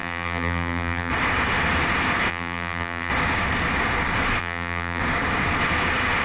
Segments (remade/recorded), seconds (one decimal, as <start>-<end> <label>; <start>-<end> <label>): 0.0-1.1 remade; 1.1-2.3 recorded; 2.3-3.1 remade; 3.1-4.4 recorded; 4.4-5.0 remade; 5.0-6.2 recorded